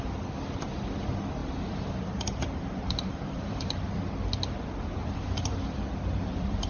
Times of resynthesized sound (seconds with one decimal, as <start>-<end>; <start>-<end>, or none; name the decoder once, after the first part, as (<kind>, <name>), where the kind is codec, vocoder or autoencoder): 1.4-4.1 (vocoder, BigVGAN v2); 5.0-5.5